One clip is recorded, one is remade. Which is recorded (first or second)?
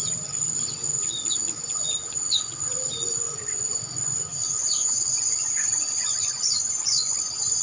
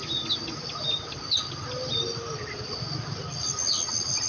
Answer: second